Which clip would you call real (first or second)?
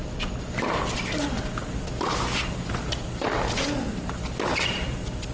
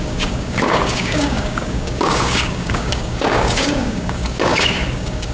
first